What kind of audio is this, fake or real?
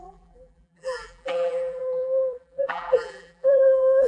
fake